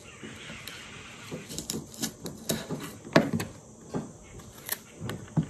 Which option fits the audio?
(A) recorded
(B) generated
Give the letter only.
A